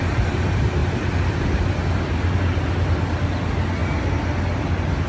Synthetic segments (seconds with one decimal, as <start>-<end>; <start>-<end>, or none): none